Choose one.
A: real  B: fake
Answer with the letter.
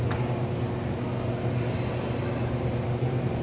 A